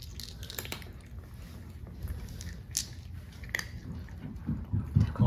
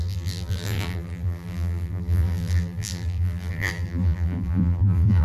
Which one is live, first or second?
first